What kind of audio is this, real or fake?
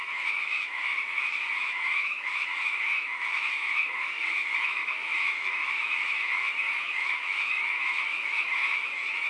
fake